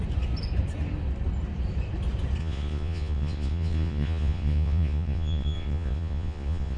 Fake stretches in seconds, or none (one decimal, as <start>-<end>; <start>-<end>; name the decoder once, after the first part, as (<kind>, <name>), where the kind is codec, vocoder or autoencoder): 2.4-6.8 (vocoder, Vocos)